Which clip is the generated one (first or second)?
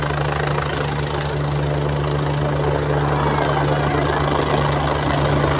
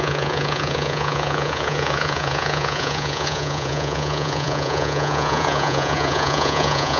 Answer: second